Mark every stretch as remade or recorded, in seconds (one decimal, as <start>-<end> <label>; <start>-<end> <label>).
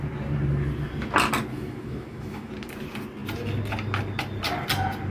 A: 0.0-1.5 recorded; 1.5-2.5 remade; 2.5-5.1 recorded